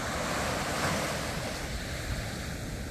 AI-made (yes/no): no